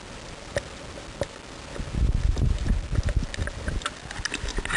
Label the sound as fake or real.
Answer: real